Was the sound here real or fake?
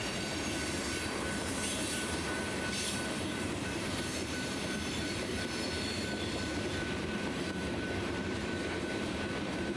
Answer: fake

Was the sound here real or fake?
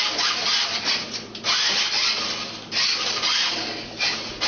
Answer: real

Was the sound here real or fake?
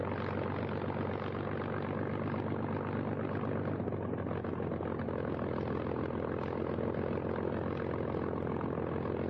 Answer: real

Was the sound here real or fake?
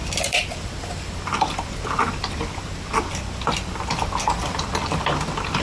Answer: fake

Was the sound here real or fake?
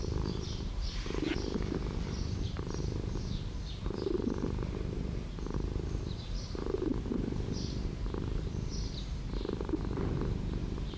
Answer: fake